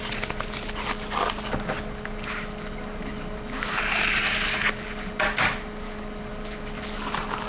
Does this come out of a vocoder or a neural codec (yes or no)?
no